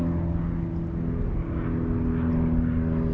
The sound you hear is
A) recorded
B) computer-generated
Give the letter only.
A